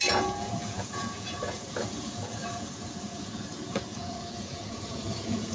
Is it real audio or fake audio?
fake